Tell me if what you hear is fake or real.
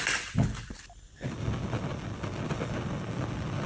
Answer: real